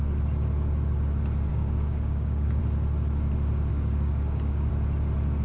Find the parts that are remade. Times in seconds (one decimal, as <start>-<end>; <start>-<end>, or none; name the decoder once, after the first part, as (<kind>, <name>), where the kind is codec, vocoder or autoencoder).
1.5-2.6 (codec, DAC); 3.7-4.7